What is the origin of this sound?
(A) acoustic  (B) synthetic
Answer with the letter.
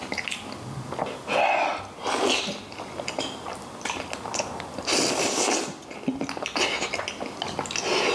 A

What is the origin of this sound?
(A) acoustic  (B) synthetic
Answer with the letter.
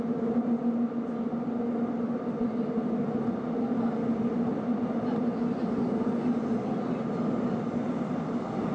A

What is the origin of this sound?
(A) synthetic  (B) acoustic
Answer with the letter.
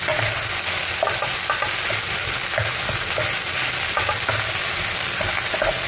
B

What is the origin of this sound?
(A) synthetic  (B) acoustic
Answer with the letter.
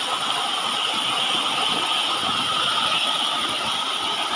B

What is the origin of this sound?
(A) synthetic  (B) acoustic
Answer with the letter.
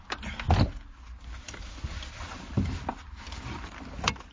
B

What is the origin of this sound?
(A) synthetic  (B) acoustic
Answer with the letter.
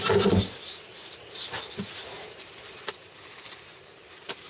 A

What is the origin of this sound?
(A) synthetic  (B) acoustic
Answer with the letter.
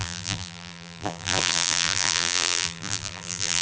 A